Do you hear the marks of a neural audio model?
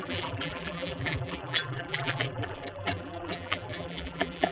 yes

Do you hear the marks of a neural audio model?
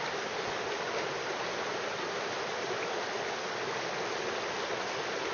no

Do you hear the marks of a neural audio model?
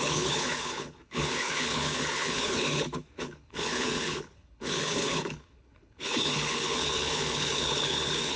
yes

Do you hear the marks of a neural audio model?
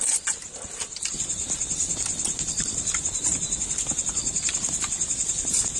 no